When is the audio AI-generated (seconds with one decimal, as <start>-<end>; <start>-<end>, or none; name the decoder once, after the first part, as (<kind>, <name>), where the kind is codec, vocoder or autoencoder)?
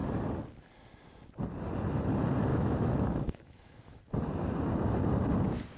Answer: 2.5-4.0 (autoencoder, DAC-VAE)